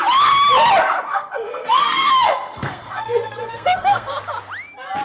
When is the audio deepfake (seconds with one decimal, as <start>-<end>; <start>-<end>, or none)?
1.1-4.1

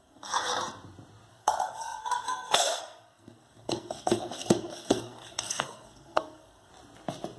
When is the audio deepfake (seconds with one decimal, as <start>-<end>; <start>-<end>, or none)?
0.0-0.5; 1.3-6.7

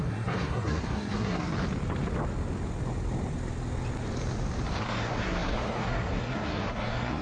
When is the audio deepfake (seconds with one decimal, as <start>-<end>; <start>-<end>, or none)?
0.0-1.5; 4.8-7.2

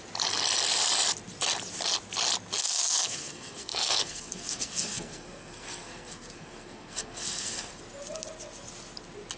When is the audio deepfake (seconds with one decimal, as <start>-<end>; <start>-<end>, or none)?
2.6-7.8